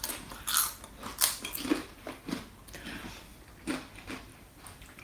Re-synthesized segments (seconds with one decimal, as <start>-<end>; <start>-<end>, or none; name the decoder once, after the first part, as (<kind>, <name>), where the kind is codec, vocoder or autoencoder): 1.8-2.5 (vocoder, BigVGAN v2); 4.3-5.0